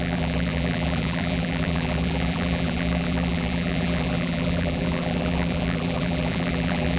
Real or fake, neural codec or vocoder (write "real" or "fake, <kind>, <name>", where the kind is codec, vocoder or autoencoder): fake, vocoder, BigVGAN v2